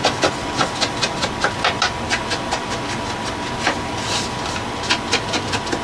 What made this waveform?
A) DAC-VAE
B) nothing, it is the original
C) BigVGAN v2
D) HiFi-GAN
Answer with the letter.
B